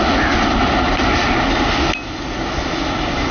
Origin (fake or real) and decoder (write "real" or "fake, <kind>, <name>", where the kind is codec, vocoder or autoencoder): real